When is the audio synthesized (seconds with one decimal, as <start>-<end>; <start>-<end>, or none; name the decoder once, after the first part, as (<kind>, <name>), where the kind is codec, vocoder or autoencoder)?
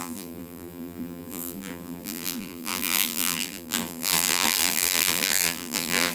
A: 0.0-6.1 (vocoder, BigVGAN v2)